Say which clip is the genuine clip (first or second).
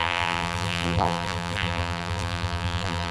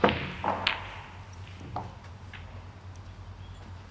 second